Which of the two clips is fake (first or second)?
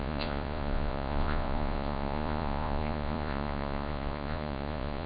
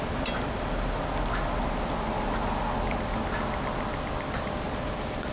first